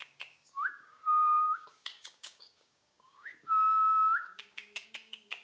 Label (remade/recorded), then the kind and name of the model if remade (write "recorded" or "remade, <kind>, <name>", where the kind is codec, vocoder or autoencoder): remade, codec, DAC